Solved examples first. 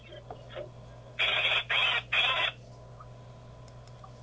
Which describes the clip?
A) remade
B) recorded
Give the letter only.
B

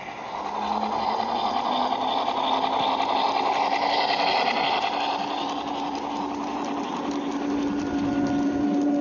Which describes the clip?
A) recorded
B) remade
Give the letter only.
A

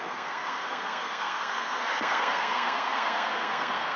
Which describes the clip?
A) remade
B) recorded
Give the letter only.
A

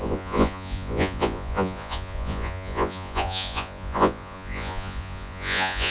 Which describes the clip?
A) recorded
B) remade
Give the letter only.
B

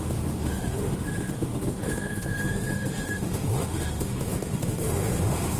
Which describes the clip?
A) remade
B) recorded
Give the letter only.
A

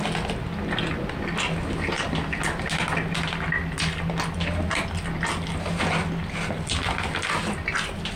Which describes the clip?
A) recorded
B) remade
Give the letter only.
A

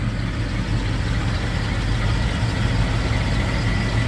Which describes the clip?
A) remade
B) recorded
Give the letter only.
B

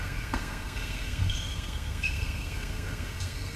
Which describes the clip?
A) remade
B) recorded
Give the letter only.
A